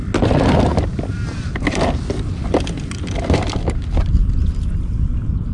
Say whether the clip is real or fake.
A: real